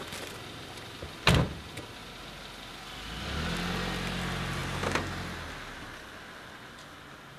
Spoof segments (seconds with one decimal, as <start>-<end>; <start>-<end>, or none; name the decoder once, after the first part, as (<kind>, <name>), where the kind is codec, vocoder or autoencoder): none